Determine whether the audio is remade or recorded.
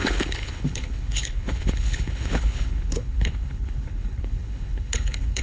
remade